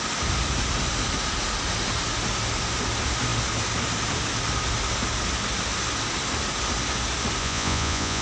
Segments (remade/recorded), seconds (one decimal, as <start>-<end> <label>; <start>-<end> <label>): 0.0-7.4 recorded; 7.4-8.2 remade